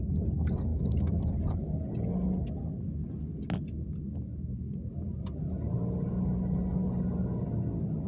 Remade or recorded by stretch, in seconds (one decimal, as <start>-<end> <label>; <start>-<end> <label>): 0.0-0.7 recorded; 0.7-1.3 remade; 1.3-8.1 recorded